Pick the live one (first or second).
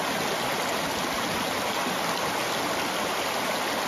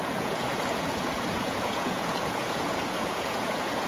first